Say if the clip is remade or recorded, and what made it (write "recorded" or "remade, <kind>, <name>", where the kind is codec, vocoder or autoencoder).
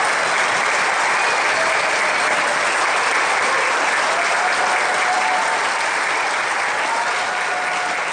recorded